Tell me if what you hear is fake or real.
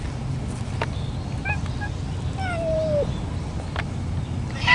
real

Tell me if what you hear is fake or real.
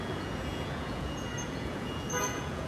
fake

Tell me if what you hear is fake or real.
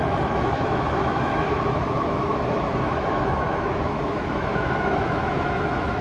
fake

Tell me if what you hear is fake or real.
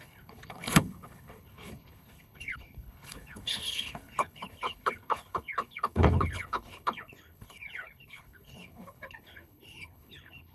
fake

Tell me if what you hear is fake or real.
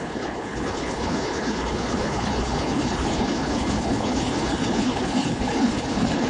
fake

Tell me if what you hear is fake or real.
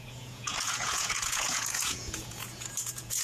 fake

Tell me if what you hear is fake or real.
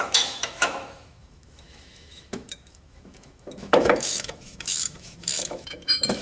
fake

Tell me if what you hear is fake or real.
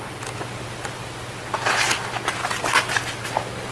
real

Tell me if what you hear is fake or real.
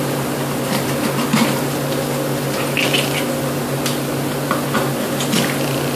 real